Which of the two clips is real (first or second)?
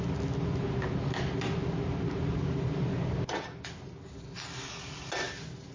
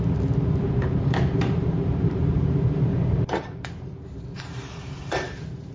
first